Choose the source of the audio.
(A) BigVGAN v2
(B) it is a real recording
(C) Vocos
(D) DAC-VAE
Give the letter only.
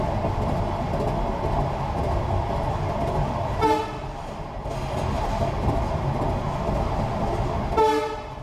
B